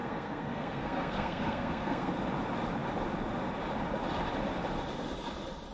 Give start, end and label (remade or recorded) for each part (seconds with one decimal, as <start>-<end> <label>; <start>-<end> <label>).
0.0-2.1 remade; 2.1-5.7 recorded